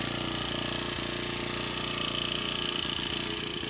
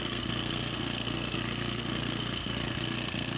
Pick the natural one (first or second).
first